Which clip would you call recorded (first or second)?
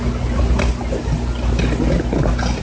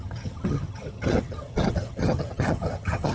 first